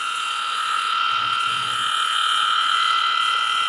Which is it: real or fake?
fake